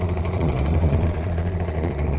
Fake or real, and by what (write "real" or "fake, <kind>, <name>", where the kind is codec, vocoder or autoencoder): fake, vocoder, Vocos